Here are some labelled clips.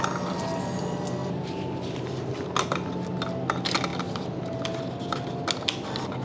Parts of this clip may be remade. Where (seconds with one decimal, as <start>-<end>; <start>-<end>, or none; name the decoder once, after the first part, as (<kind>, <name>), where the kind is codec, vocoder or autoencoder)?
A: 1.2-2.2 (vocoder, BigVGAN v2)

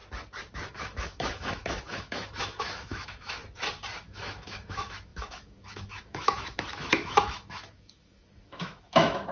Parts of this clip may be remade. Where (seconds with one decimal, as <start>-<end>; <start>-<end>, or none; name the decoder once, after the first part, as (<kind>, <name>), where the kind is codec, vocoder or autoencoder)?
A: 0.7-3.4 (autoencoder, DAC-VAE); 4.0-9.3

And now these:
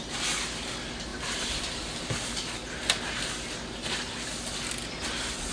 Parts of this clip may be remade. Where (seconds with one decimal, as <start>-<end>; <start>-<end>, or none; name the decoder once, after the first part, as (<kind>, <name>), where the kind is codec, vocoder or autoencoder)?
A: 1.1-3.3 (vocoder, BigVGAN v2); 3.8-4.4

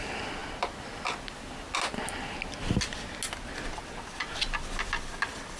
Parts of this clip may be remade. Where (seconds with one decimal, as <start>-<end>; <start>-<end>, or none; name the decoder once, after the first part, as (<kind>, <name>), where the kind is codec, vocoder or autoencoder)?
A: none